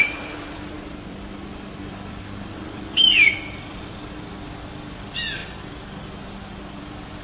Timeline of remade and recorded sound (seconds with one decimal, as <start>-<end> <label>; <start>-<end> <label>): 0.0-4.3 remade; 4.3-7.2 recorded